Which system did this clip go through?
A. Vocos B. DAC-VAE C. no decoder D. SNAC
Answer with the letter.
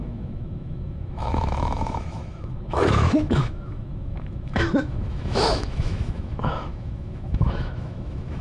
B